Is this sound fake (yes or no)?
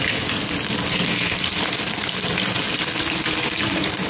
no